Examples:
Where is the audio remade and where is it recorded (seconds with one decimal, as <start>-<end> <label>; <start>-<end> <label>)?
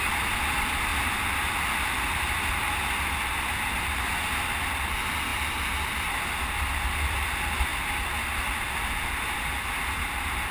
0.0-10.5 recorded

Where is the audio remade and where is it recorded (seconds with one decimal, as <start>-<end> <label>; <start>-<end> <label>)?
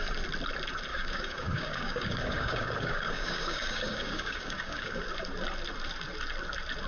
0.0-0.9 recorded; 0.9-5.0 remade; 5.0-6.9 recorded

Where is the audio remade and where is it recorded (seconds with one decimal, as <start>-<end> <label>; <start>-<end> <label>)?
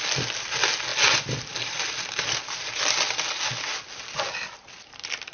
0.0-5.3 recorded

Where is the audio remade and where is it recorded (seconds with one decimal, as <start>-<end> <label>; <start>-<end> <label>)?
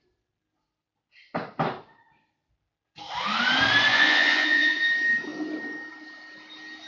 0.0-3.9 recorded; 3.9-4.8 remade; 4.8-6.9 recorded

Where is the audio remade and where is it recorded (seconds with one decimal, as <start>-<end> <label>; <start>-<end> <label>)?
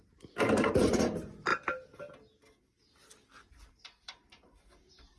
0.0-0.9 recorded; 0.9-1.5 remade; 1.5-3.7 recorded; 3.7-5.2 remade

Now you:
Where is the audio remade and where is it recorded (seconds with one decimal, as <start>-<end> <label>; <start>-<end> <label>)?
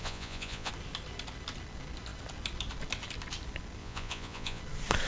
0.0-0.7 remade; 0.7-3.8 recorded; 3.8-4.6 remade; 4.6-5.1 recorded